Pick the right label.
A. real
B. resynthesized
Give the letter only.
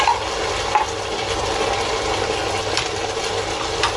A